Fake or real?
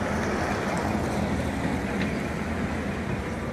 real